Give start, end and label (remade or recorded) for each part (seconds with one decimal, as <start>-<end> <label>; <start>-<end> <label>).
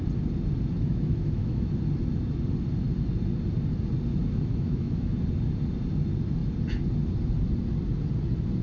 0.0-0.8 recorded; 0.8-1.7 remade; 1.7-4.1 recorded; 4.1-5.2 remade; 5.2-8.6 recorded